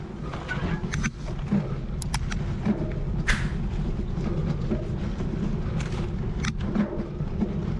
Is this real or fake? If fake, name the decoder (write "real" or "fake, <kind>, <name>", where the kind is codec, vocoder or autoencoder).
real